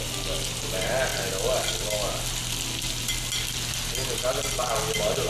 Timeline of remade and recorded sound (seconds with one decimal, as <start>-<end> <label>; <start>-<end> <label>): 0.0-5.3 recorded

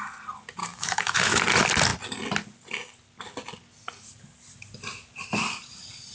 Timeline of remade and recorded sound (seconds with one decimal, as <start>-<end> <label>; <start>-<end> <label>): 0.0-0.6 recorded; 0.6-1.4 remade; 1.4-6.1 recorded

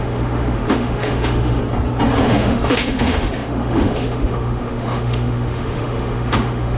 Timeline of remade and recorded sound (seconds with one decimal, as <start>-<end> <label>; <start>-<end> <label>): 0.0-1.6 remade; 1.6-2.2 recorded; 2.2-6.8 remade

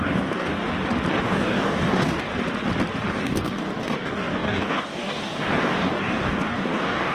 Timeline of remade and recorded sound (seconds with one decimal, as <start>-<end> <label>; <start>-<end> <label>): 0.0-0.6 remade; 0.6-1.2 recorded; 1.2-2.3 remade; 2.3-3.1 recorded; 3.1-7.1 remade